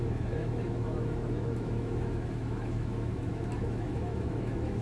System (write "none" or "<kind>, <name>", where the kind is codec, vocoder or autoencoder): autoencoder, DAC-VAE